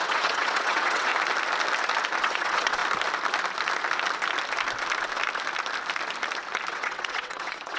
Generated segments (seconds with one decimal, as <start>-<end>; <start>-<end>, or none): 0.0-1.1; 2.2-2.8; 6.7-7.8

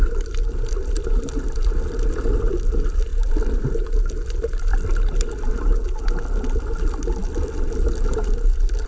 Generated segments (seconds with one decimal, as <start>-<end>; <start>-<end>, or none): none

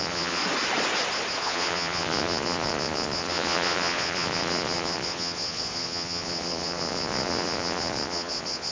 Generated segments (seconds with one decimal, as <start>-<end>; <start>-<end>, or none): 0.0-0.4; 1.4-8.7

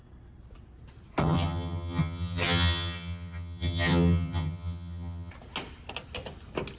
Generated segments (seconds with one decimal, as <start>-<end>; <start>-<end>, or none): 1.2-5.3

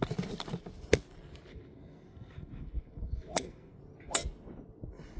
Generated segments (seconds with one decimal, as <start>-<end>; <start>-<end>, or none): 1.5-3.8

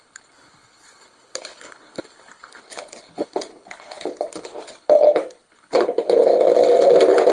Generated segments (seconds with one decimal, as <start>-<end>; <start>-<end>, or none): 0.0-6.3

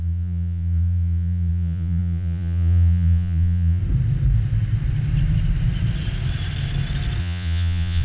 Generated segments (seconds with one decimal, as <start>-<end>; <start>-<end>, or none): 0.0-3.8; 7.2-8.0

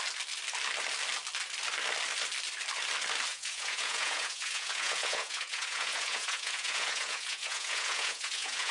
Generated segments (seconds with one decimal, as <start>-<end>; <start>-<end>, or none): 3.3-8.7